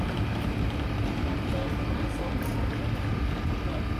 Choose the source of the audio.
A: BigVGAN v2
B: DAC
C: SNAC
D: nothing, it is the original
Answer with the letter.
D